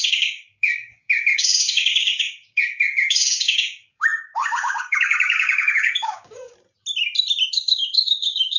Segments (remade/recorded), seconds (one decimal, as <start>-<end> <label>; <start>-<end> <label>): 0.0-6.5 remade; 6.5-7.5 recorded; 7.5-8.6 remade